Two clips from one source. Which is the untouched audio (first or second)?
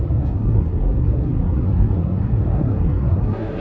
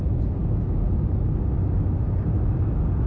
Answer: second